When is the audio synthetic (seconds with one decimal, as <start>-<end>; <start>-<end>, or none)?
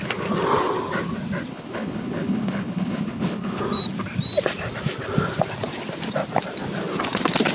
1.5-3.6